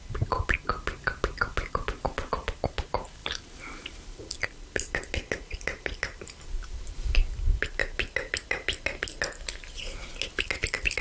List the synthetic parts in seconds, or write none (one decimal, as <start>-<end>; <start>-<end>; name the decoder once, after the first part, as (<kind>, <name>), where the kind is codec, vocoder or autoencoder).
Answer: 3.2-4.2 (vocoder, BigVGAN v2)